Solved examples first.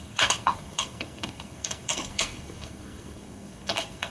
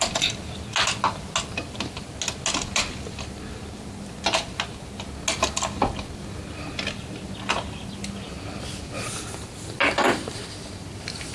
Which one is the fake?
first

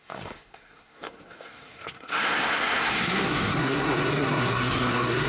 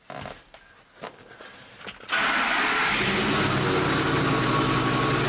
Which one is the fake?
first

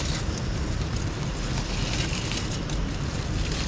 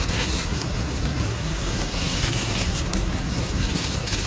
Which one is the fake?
second